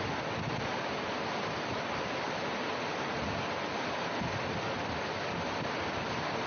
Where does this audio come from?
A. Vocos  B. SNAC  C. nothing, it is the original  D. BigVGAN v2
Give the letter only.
C